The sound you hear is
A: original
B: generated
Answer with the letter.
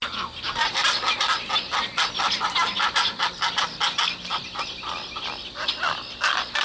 A